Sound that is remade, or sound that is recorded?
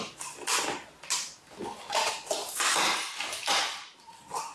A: recorded